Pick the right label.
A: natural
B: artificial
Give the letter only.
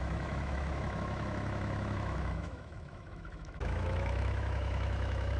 B